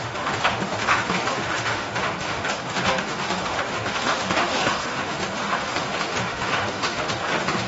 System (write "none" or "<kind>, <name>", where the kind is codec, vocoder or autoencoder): autoencoder, DAC-VAE